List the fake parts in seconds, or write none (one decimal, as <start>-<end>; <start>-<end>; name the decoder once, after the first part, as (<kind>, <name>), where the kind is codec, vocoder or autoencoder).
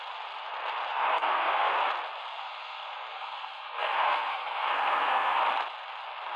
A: 0.9-1.8 (codec, SNAC); 2.3-5.4